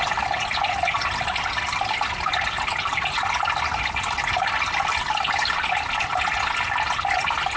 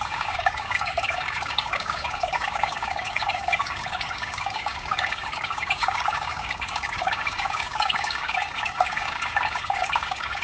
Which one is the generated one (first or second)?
second